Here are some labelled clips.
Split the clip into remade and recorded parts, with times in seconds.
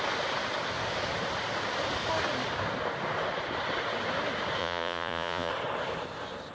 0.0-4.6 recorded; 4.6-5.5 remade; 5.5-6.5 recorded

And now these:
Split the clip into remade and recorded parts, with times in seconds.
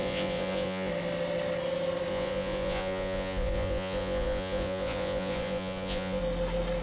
0.0-0.9 remade; 0.9-2.1 recorded; 2.1-6.2 remade; 6.2-6.8 recorded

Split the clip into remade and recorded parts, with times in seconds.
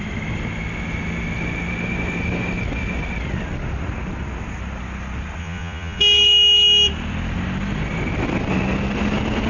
0.0-5.4 recorded; 5.4-6.0 remade; 6.0-9.5 recorded